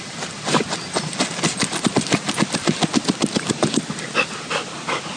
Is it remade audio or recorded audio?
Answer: recorded